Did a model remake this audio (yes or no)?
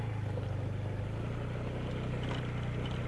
no